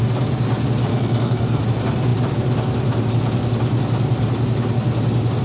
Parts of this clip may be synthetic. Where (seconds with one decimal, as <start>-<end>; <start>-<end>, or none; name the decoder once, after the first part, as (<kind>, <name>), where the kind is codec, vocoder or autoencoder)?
0.9-1.6 (codec, SNAC)

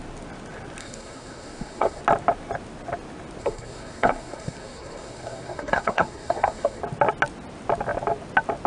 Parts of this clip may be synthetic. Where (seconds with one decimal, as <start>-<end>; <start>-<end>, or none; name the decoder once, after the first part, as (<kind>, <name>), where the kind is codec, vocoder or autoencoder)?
0.8-2.0 (codec, SNAC); 3.4-6.8

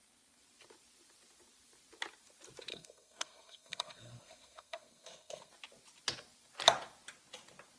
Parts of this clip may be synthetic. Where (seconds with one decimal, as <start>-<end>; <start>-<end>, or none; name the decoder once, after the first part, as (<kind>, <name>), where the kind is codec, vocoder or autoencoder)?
2.7-5.5 (codec, SNAC)

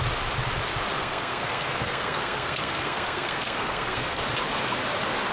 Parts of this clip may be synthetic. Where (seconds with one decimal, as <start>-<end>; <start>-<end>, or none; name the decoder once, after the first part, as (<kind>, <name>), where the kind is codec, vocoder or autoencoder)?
1.0-4.2 (codec, SNAC)

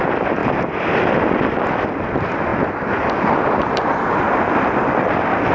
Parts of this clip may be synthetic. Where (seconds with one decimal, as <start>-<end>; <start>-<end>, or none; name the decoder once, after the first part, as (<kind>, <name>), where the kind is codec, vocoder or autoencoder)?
none

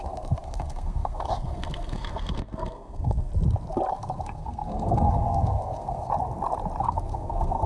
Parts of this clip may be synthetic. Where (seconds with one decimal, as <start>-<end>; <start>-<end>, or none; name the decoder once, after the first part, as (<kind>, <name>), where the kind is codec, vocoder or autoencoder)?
0.0-3.3 (codec, SNAC); 3.9-6.1; 6.8-7.7

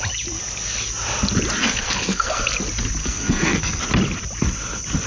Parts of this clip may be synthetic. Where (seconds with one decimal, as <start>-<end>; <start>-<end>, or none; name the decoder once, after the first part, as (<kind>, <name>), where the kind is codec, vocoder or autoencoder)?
1.6-2.4 (codec, SNAC); 3.0-3.8